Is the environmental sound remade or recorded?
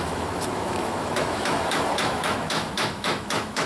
remade